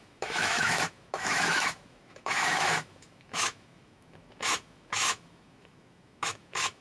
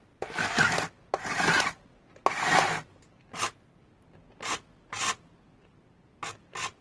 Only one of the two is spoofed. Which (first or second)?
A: first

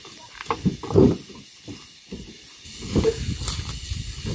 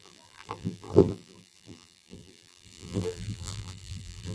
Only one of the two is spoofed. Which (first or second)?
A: second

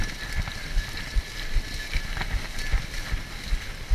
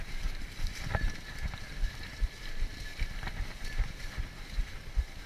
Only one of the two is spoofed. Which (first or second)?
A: second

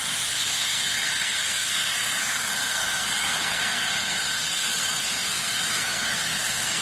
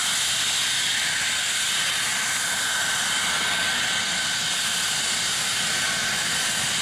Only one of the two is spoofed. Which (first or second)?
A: first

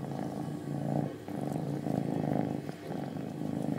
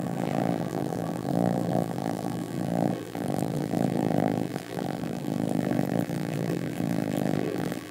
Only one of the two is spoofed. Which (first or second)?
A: second